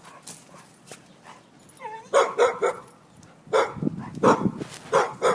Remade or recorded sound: recorded